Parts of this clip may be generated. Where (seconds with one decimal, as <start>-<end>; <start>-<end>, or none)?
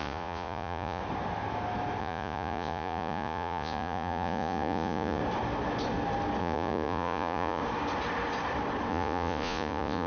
0.0-1.0; 2.0-5.2; 6.4-7.6; 8.9-10.1